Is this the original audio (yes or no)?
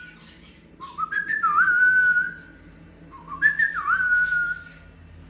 yes